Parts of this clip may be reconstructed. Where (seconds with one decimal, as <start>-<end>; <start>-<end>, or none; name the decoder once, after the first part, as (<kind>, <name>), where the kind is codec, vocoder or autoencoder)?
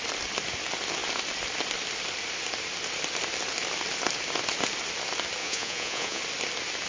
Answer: 5.4-6.2 (vocoder, Vocos)